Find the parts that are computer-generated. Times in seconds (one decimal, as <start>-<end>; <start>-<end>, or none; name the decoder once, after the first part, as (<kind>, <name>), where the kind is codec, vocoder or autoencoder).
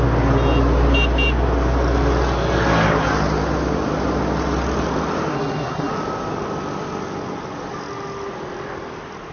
5.3-5.9 (codec, SNAC)